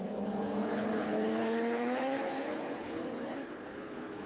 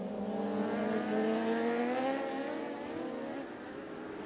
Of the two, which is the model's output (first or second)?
first